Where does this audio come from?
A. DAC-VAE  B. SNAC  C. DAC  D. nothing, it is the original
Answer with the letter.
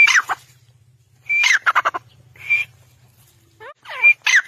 D